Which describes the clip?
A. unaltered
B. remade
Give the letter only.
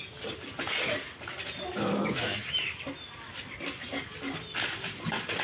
A